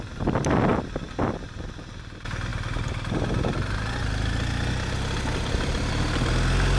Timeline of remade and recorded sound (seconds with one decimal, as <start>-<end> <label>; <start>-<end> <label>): 0.0-6.8 recorded